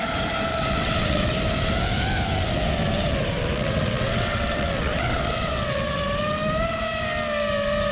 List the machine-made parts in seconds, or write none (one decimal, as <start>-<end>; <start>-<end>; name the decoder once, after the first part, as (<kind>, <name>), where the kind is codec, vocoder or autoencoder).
0.5-1.3 (vocoder, WaveNeXt); 3.4-6.0